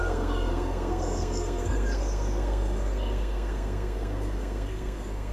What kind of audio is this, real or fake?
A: fake